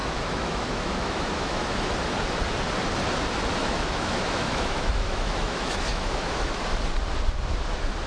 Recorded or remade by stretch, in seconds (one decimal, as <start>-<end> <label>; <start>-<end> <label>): 0.0-1.9 remade; 1.9-3.6 recorded; 3.6-6.6 remade; 6.6-8.1 recorded